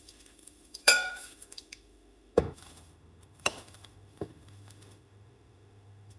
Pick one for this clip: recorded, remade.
remade